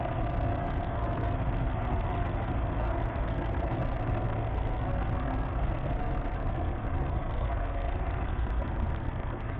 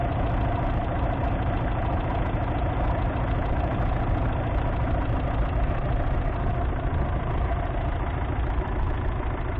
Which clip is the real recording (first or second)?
second